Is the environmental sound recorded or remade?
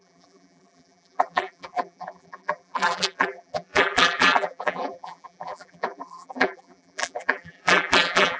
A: remade